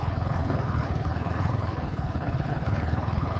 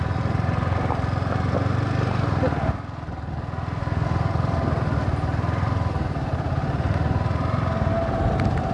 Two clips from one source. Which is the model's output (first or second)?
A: first